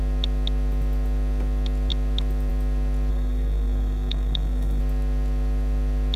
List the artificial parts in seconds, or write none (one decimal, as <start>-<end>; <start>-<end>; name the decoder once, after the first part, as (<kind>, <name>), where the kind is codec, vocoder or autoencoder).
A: 3.1-4.8 (codec, SNAC)